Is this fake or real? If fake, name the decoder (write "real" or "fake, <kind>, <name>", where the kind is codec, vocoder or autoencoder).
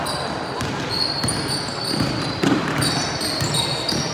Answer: real